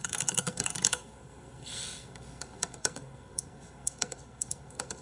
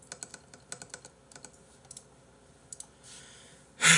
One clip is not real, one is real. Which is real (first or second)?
second